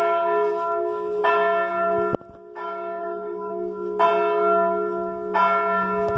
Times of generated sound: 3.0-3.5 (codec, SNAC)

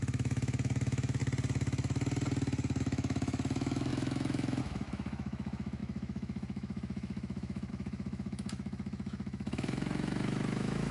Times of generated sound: 0.0-1.2 (autoencoder, DAC-VAE); 2.8-10.9